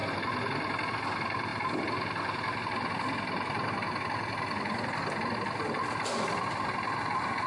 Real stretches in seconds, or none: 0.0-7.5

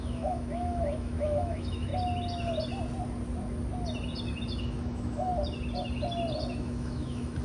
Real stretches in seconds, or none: 1.9-4.6; 5.3-6.5

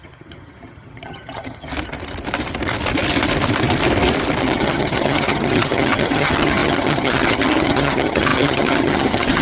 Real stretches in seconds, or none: 1.7-4.4

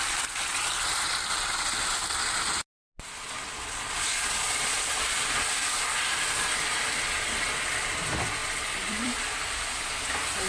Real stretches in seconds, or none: 0.0-8.4; 9.9-10.5

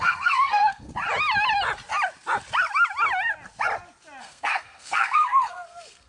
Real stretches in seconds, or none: 0.9-4.2